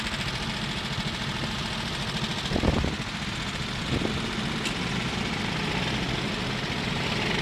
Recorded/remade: recorded